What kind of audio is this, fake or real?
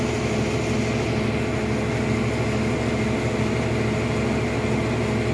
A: real